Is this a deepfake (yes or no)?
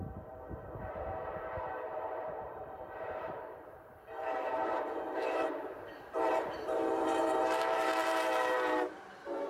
yes